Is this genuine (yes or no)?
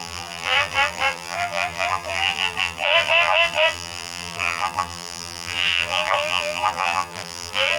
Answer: no